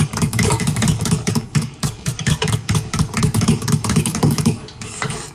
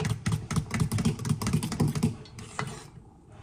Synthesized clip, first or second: first